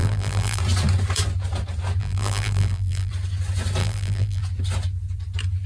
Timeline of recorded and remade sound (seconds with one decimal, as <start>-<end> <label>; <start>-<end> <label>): 0.0-0.6 remade; 0.6-2.0 recorded; 2.0-3.1 remade; 3.1-3.8 recorded; 3.8-4.4 remade; 4.4-5.7 recorded